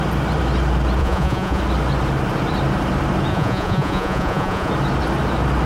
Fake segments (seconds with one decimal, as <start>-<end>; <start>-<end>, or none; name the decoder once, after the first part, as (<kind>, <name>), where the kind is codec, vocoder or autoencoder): 1.0-1.6 (vocoder, Vocos); 3.3-4.7